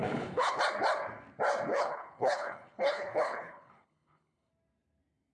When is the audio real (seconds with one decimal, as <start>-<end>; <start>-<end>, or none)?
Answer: 0.6-1.7; 4.5-5.3